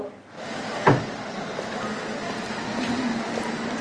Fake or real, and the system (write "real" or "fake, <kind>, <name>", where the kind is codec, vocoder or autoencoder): real